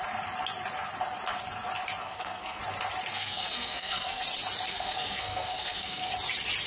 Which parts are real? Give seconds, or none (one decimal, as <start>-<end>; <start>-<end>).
0.0-2.0; 2.6-3.1; 4.2-4.7; 6.1-6.7